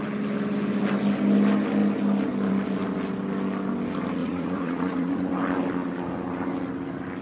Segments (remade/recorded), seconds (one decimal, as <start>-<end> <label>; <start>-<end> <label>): 0.0-4.2 recorded; 4.2-5.1 remade; 5.1-7.2 recorded